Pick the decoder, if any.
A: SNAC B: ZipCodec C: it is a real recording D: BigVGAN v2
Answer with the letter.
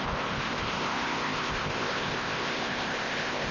B